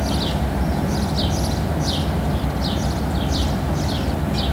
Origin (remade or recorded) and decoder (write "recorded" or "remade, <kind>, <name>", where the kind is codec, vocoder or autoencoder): recorded